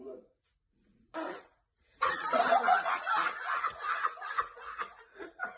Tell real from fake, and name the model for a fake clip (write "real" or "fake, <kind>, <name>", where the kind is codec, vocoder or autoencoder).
fake, vocoder, Vocos